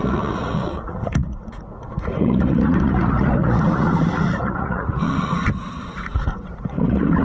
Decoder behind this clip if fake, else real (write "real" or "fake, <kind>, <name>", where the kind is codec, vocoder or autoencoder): fake, vocoder, Vocos